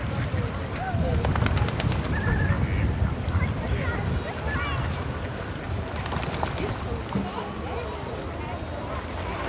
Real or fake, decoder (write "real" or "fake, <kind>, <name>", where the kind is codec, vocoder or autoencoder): real